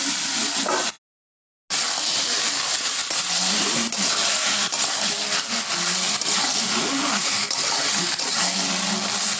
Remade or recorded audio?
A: recorded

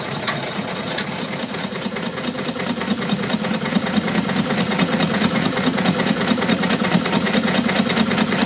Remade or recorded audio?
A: remade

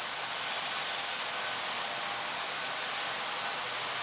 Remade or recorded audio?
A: recorded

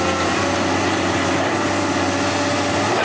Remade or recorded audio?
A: recorded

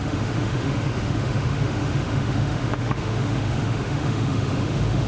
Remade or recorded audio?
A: remade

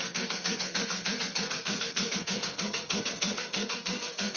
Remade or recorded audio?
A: remade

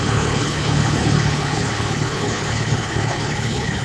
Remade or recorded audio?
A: remade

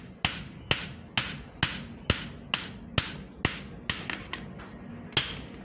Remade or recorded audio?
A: recorded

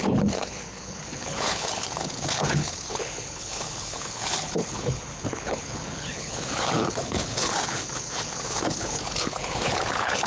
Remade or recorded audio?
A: remade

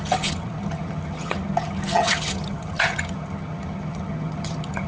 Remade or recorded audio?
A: remade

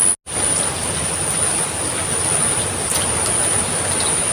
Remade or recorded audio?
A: recorded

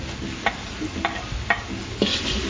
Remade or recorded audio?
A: recorded